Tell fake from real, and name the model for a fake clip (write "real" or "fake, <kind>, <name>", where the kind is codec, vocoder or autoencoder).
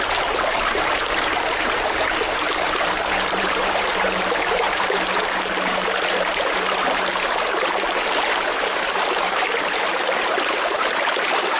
fake, vocoder, BigVGAN v2